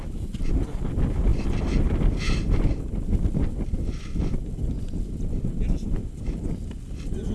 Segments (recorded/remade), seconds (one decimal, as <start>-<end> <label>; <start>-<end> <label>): 0.0-7.3 recorded